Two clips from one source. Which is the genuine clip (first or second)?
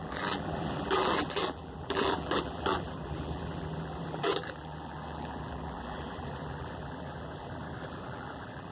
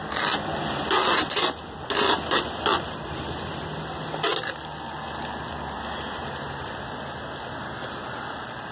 second